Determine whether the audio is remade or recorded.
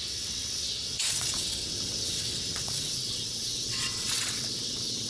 remade